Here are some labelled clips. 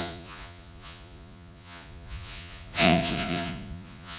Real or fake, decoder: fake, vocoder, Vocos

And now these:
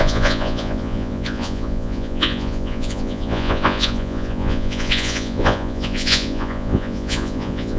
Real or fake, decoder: fake, vocoder, Vocos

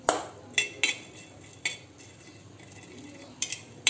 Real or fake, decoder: real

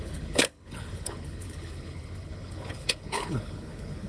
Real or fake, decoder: fake, codec, HILCodec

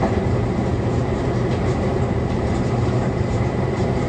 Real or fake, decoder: fake, vocoder, BigVGAN v2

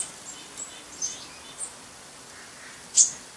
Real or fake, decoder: real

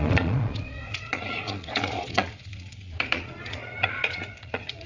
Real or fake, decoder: fake, vocoder, Vocos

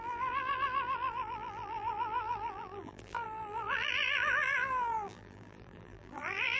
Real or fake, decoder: fake, vocoder, BigVGAN v2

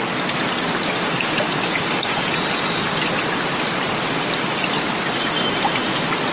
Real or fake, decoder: real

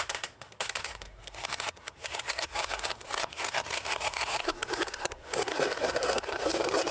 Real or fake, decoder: fake, codec, SNAC